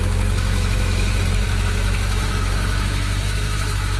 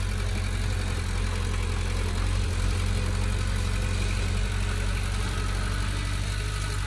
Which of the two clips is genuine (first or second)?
second